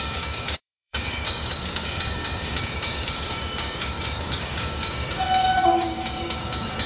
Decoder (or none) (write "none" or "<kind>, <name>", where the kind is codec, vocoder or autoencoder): codec, DAC